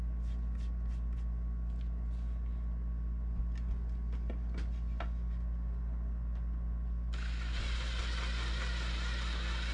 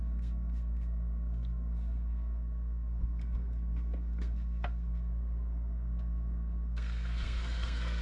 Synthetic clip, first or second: second